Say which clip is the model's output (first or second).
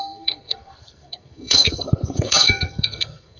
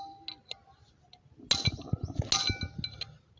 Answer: first